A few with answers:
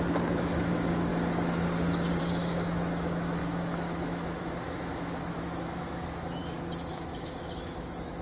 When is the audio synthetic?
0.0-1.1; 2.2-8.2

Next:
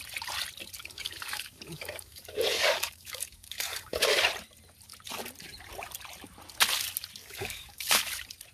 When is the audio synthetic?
0.8-4.2; 7.2-8.0

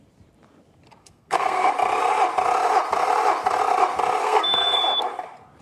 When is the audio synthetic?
1.0-1.7; 4.2-4.8

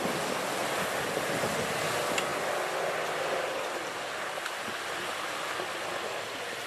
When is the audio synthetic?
none

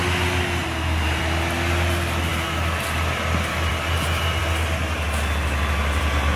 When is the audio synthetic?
0.6-1.2

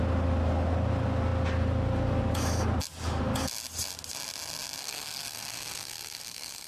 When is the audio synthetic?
4.8-6.7

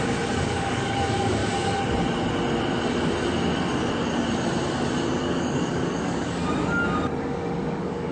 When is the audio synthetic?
0.0-1.4; 5.2-6.4; 7.2-8.1